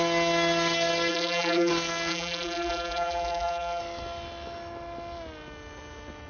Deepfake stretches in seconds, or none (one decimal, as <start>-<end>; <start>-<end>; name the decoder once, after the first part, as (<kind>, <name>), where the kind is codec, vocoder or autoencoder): 1.1-1.7 (vocoder, BigVGAN v2); 2.1-3.8